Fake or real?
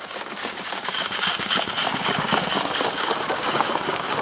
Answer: fake